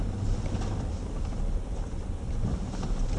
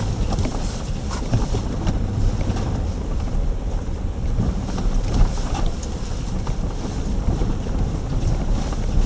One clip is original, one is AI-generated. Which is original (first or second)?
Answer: first